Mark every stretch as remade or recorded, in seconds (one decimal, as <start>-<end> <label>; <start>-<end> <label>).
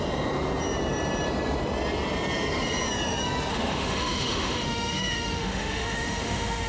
0.0-3.5 recorded; 3.5-6.7 remade